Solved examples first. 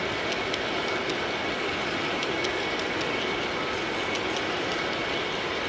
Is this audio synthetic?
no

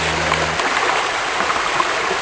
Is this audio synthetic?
no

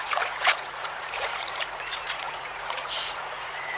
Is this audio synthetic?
yes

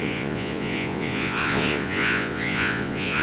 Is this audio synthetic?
yes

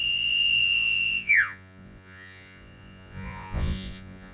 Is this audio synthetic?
yes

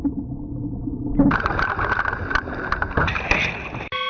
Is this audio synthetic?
no